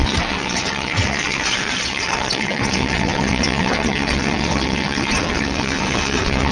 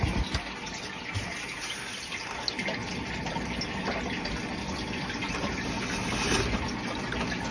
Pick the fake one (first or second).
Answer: first